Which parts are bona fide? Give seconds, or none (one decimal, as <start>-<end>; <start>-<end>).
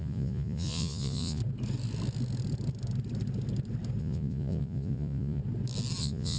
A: 1.4-4.0; 5.4-6.0